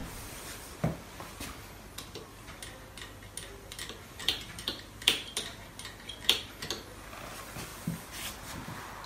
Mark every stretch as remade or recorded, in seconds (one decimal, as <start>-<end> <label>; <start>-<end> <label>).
0.0-4.2 recorded; 4.2-6.4 remade; 6.4-9.1 recorded